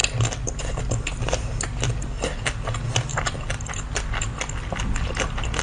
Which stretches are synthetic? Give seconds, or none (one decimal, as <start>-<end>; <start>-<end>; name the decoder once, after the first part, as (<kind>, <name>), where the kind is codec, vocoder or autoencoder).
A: none